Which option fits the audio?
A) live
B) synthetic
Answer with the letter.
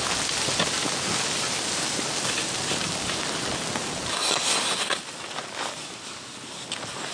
A